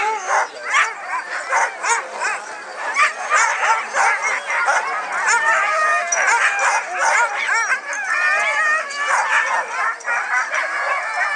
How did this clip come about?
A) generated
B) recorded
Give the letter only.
B